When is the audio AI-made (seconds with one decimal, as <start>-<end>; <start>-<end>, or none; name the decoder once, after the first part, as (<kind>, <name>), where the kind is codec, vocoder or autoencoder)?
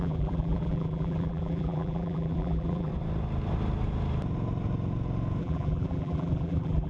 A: 0.0-2.9 (vocoder, BigVGAN v2); 5.4-6.9